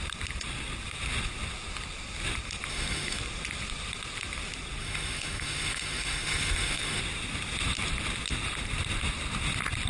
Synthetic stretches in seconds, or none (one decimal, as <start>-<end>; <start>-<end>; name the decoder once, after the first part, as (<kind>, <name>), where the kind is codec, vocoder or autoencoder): 2.7-3.2 (autoencoder, DAC-VAE); 4.8-7.0